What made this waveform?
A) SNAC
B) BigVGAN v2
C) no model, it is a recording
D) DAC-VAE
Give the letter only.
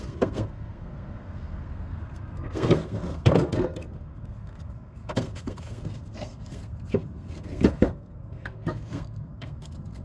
A